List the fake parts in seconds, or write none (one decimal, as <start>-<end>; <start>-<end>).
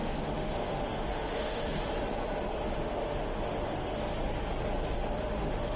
0.0-1.6; 2.5-4.1; 5.2-5.8